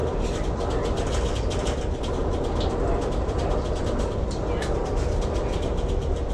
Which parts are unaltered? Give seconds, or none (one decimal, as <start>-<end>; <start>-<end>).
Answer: 0.0-6.3